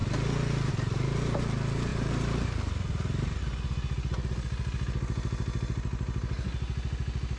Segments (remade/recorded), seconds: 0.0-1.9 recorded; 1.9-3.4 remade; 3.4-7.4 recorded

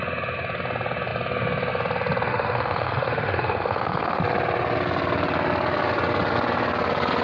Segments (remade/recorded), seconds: 0.0-2.3 recorded; 2.3-4.2 remade; 4.2-7.2 recorded

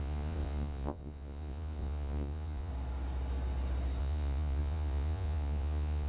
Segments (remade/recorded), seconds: 0.0-2.7 remade; 2.7-4.0 recorded; 4.0-6.1 remade

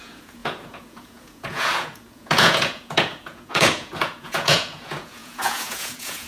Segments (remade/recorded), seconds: 0.0-6.3 remade

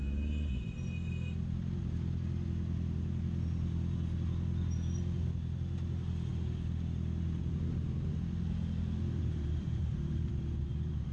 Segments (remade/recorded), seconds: 0.0-9.2 recorded; 9.2-10.3 remade; 10.3-11.1 recorded